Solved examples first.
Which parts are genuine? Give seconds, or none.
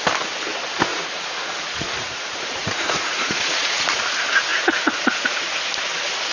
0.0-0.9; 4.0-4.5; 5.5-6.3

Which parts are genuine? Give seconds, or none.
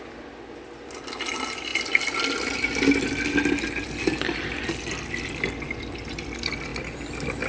0.0-7.5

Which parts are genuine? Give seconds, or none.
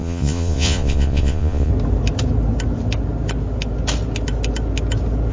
1.7-5.3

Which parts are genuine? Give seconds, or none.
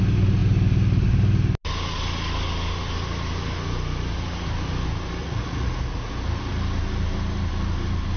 0.0-5.2; 6.1-8.2